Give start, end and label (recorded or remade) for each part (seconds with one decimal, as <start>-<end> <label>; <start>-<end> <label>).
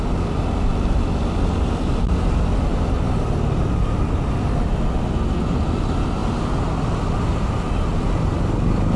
0.0-9.0 recorded